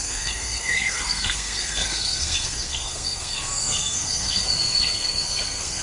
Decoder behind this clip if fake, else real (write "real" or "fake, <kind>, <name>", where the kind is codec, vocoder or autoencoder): fake, codec, SNAC